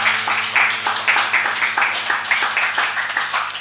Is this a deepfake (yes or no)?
no